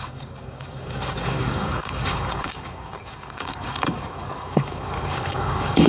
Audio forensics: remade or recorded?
remade